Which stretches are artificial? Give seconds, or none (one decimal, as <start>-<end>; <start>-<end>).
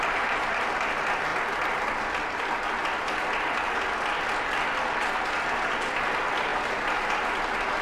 6.5-7.1